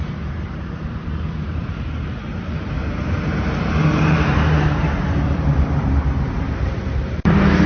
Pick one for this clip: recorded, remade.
remade